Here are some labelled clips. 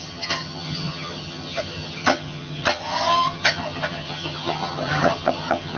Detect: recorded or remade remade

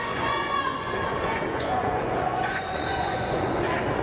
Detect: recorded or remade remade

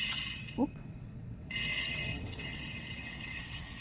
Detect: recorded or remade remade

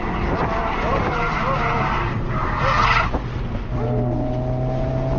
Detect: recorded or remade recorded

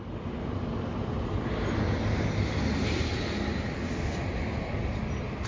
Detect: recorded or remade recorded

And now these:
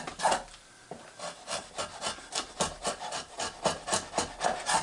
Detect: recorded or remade recorded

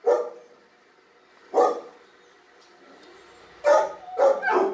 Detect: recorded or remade recorded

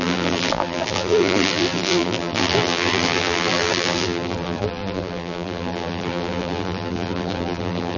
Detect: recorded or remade remade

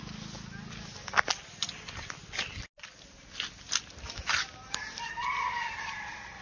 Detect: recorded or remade recorded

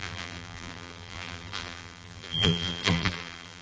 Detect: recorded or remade remade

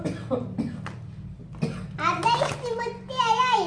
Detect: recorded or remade recorded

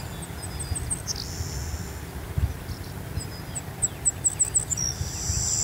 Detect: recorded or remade recorded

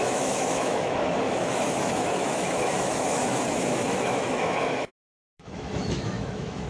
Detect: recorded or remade remade